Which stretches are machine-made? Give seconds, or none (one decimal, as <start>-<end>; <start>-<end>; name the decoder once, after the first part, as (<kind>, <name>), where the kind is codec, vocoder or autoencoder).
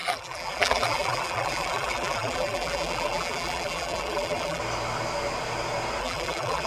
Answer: 0.0-4.6 (vocoder, BigVGAN v2); 6.0-6.7